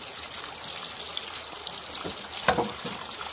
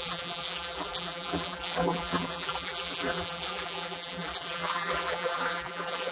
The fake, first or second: second